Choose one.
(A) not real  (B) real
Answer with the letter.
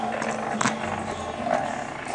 B